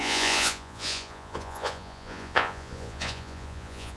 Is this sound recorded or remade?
remade